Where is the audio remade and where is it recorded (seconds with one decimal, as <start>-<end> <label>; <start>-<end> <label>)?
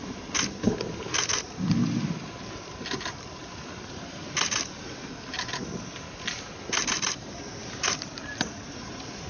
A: 0.0-3.4 recorded; 3.4-4.7 remade; 4.7-7.6 recorded; 7.6-8.1 remade; 8.1-9.3 recorded